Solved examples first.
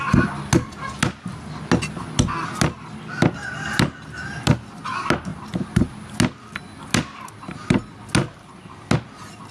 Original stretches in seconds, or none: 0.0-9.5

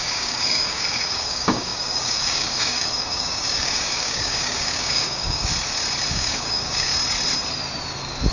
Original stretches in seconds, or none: 5.5-6.1; 6.9-8.3